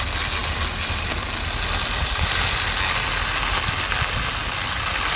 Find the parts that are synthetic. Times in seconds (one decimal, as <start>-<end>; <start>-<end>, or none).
none